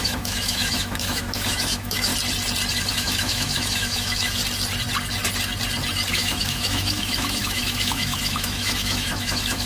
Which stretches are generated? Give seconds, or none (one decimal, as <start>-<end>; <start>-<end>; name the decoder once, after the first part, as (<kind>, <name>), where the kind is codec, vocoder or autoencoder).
0.0-2.1 (autoencoder, DAC-VAE); 2.9-4.4; 6.1-9.7